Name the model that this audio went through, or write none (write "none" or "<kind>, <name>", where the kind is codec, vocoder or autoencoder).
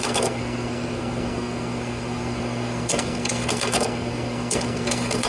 codec, SNAC